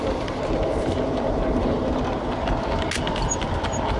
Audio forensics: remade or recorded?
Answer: recorded